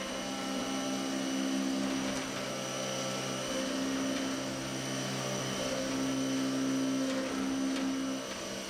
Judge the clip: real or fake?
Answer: real